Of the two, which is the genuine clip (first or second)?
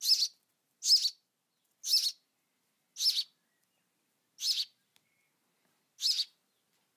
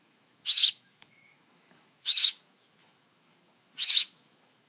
first